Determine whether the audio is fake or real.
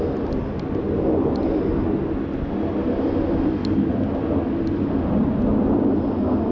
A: real